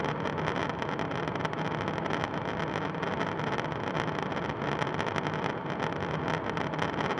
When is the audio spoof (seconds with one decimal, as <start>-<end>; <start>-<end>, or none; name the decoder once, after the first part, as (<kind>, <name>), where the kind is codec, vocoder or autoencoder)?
none